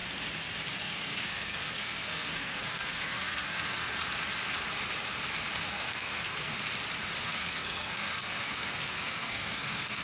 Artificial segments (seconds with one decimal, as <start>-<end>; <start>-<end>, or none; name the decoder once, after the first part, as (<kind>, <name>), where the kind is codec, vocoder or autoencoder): 0.8-3.9 (codec, SNAC); 5.7-6.5; 7.2-10.0